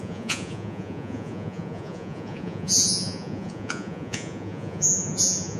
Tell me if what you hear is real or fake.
fake